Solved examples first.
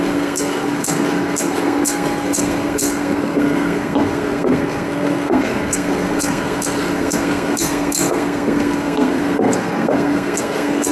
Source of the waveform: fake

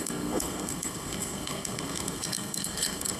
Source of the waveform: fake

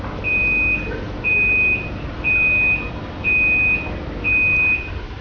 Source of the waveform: real